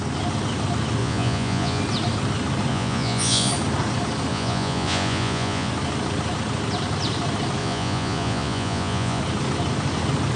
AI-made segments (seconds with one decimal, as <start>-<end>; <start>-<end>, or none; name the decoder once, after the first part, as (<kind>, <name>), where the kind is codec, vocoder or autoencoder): 1.0-1.8 (vocoder, Vocos); 2.7-3.5; 4.3-5.7; 7.6-9.2